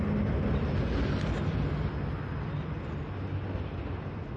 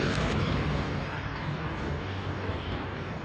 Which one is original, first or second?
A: first